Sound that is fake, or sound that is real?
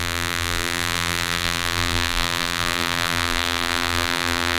fake